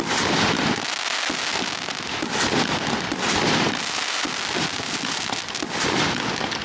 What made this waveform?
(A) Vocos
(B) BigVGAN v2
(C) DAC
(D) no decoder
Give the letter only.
D